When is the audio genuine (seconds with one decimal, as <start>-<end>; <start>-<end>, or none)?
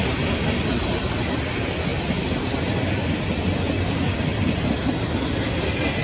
0.0-6.0